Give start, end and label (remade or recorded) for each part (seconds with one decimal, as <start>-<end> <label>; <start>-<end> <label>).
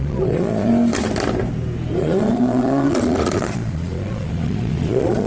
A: 0.0-0.7 remade; 0.7-2.0 recorded; 2.0-5.3 remade